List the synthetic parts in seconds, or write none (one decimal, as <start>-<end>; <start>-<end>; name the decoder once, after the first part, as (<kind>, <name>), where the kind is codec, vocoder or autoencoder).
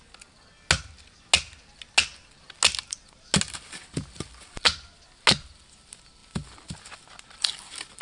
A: none